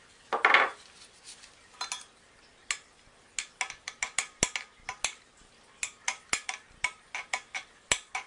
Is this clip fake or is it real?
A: real